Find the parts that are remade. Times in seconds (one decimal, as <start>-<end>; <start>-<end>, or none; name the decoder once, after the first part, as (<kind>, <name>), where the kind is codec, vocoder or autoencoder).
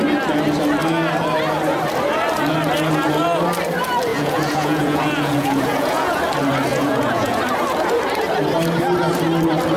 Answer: 4.1-6.2 (vocoder, Vocos); 6.7-7.4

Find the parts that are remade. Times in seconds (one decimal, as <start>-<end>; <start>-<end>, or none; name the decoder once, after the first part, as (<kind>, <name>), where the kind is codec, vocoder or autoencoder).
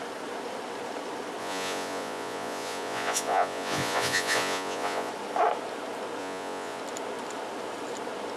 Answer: 1.4-5.1 (vocoder, Vocos); 6.2-6.8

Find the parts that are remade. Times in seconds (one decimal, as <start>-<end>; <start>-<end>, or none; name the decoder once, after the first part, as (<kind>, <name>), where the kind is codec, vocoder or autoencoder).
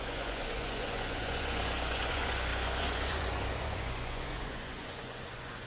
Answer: 0.0-5.7 (vocoder, Vocos)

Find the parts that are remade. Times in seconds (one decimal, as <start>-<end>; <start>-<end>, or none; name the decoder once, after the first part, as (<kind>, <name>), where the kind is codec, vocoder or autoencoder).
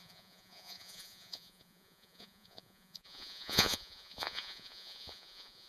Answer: 0.0-5.7 (vocoder, Vocos)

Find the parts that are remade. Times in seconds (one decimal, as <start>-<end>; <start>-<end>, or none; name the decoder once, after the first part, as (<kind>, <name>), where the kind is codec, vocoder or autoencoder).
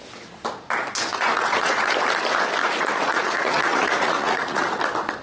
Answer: 1.1-1.9 (vocoder, Vocos); 2.6-4.8